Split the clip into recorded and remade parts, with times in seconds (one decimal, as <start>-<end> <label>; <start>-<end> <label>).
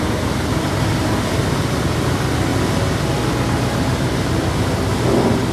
0.0-2.5 remade; 2.5-3.1 recorded; 3.1-5.5 remade